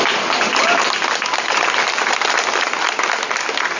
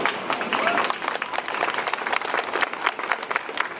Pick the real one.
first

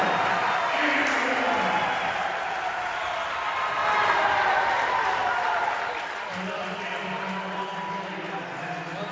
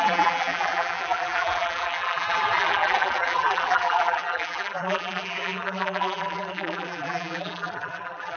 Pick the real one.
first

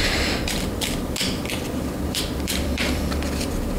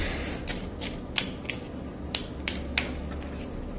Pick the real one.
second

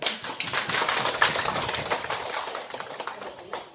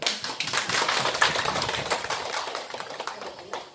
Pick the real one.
first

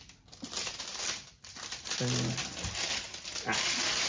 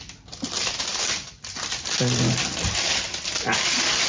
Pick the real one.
first